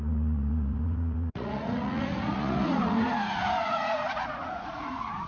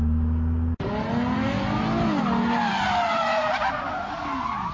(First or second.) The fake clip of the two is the first